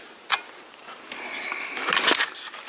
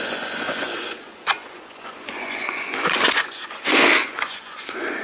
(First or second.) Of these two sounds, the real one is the first